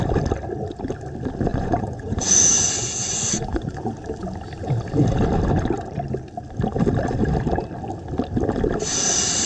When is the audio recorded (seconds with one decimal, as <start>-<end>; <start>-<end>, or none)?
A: 0.0-1.5; 3.9-9.5